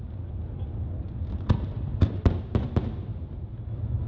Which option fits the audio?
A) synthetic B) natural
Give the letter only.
B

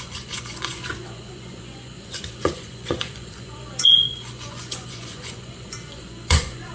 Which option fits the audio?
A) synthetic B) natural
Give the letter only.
A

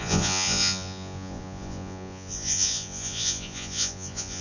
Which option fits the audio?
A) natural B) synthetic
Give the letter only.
B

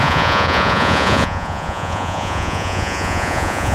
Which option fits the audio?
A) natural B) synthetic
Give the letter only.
B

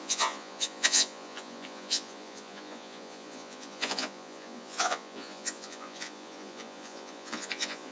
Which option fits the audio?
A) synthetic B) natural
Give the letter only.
A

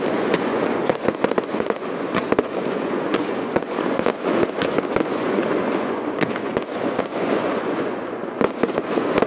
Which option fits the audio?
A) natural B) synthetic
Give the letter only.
B